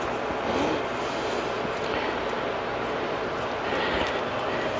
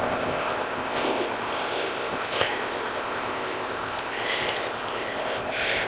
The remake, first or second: second